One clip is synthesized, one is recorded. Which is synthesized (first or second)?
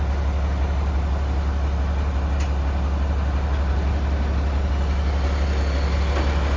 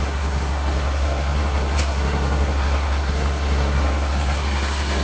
second